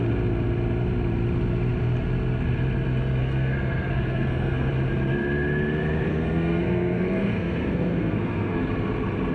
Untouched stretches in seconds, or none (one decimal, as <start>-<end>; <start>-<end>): 0.0-3.2; 4.7-6.1; 8.6-9.3